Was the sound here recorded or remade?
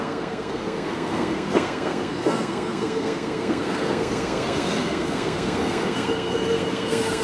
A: remade